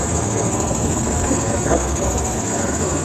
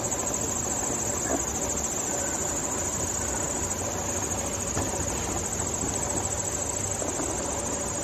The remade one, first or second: first